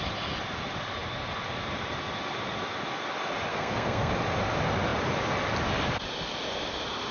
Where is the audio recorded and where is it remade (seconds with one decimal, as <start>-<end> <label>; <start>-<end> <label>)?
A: 0.0-3.5 recorded; 3.5-4.1 remade; 4.1-7.1 recorded